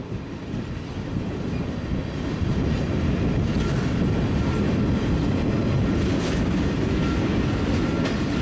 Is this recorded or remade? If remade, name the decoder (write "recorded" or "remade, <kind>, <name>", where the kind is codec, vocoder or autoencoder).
recorded